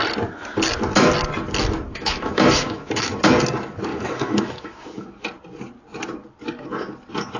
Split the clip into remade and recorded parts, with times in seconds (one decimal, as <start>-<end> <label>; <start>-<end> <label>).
0.0-1.9 recorded; 1.9-3.2 remade; 3.2-3.9 recorded; 3.9-5.2 remade; 5.2-7.4 recorded